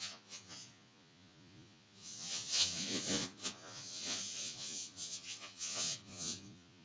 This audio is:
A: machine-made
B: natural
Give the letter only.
A